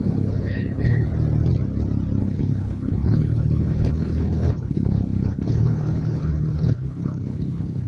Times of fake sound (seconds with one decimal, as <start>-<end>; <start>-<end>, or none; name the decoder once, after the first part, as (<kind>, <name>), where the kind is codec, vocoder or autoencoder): 0.0-1.1 (codec, HILCodec); 2.2-7.9